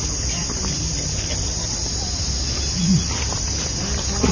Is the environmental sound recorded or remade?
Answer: recorded